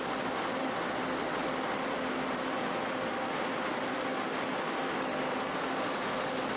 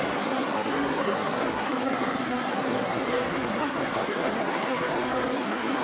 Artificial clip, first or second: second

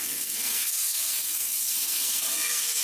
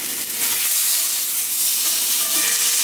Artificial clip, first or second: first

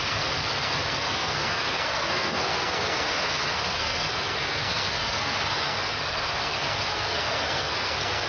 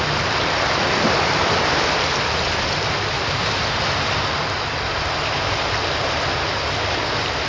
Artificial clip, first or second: first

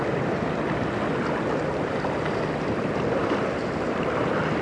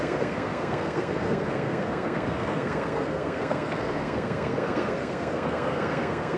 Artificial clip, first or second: second